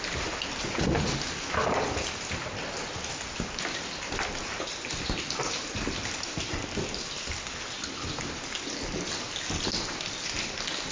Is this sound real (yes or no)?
yes